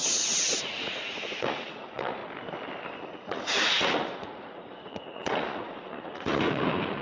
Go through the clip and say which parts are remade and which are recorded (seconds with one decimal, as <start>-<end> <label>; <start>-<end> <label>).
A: 0.0-2.2 remade; 2.2-3.0 recorded; 3.0-7.0 remade